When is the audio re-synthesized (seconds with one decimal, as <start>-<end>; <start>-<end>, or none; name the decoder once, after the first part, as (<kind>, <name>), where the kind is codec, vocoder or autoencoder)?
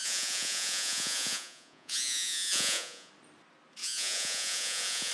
0.0-3.1 (vocoder, Vocos); 3.8-5.1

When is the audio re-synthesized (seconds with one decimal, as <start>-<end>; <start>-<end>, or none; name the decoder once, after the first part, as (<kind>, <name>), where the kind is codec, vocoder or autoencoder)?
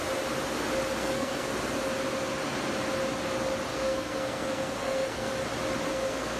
1.0-1.5 (codec, SNAC); 3.7-5.3; 5.9-6.4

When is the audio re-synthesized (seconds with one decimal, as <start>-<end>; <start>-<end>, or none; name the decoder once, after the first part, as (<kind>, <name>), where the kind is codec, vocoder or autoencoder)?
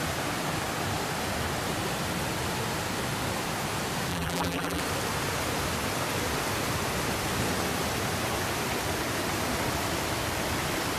4.1-4.8 (vocoder, BigVGAN v2)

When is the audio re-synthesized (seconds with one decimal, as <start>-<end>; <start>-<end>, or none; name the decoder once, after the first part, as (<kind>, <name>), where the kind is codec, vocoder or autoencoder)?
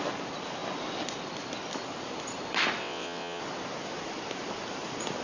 2.8-3.4 (vocoder, WaveNeXt)